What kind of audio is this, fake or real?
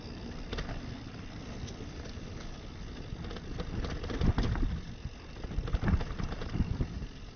real